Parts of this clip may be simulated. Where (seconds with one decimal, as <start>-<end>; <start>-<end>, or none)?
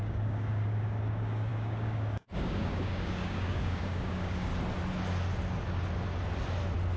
0.0-4.5